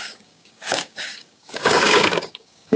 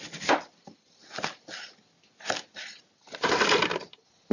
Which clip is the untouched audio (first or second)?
second